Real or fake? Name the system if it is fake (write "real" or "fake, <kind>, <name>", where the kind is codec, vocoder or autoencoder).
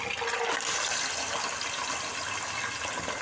real